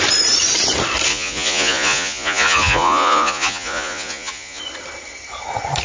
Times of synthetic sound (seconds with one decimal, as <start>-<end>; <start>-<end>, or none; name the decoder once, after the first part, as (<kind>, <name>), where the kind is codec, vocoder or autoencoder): 1.1-4.6 (vocoder, Vocos)

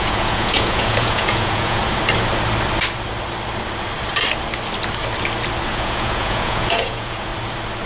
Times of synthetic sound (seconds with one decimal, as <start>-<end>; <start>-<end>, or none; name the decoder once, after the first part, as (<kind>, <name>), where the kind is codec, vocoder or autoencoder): 0.0-1.8 (vocoder, Vocos); 5.7-7.3

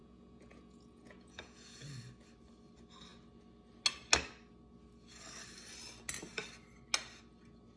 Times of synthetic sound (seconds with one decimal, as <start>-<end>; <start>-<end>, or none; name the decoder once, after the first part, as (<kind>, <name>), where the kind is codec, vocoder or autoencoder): 0.0-1.8 (vocoder, Vocos)